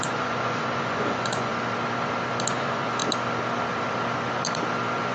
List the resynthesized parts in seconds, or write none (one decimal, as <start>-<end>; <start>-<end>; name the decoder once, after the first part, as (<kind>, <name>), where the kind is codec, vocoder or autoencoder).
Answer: 0.0-1.5 (vocoder, Vocos); 2.5-3.0